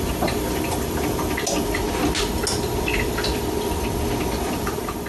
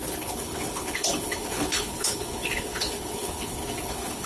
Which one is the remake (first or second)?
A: second